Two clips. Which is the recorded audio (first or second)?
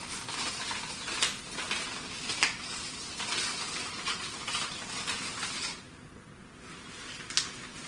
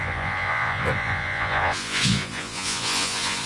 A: first